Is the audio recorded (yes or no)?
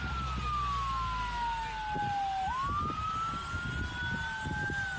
yes